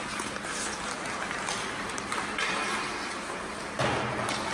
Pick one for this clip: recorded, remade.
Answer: recorded